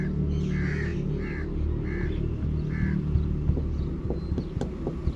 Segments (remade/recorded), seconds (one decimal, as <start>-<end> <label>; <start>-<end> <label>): 0.0-5.2 recorded

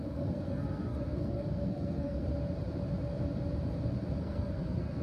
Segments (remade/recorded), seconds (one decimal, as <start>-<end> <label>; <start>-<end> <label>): 0.0-2.3 remade; 2.3-4.2 recorded; 4.2-5.0 remade

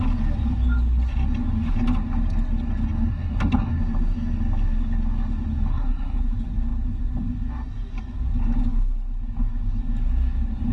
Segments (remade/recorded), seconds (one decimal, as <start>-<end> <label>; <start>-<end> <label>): 0.0-3.1 recorded; 3.1-3.8 remade; 3.8-5.7 recorded; 5.7-6.2 remade; 6.2-10.7 recorded

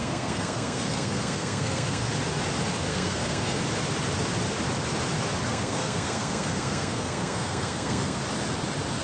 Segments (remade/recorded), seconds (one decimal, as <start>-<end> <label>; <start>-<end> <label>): 0.0-2.1 remade; 2.1-2.9 recorded; 2.9-3.6 remade; 3.6-5.5 recorded; 5.5-8.2 remade; 8.2-9.0 recorded

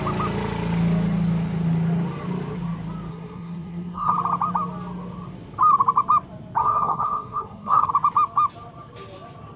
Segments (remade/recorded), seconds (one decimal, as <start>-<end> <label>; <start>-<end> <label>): 0.0-3.1 recorded; 3.1-4.1 remade; 4.1-6.6 recorded; 6.6-7.9 remade; 7.9-9.6 recorded

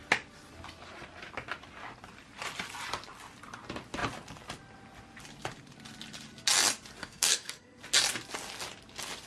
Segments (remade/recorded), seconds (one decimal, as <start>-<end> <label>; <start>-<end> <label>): 0.0-7.0 recorded; 7.0-7.8 remade; 7.8-9.3 recorded